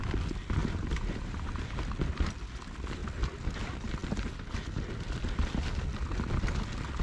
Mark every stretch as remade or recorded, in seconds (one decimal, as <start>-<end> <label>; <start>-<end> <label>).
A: 0.0-0.6 recorded; 0.6-1.8 remade; 1.8-7.0 recorded